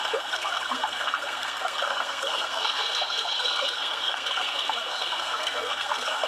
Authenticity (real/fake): fake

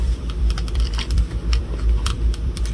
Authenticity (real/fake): fake